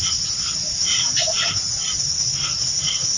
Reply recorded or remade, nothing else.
recorded